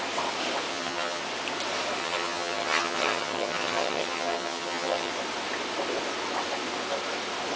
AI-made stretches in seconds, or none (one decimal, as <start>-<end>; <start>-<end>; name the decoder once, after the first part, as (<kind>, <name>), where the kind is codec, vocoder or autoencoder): 0.7-1.2 (vocoder, HiFi-GAN); 2.0-5.1